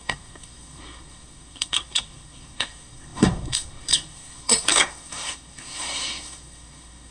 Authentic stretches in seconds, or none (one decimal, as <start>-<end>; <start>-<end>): none